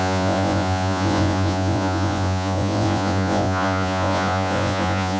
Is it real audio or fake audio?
fake